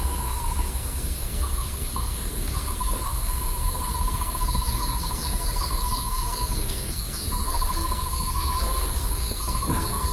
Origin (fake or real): fake